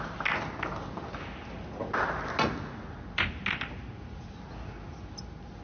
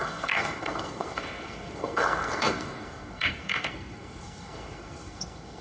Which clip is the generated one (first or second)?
second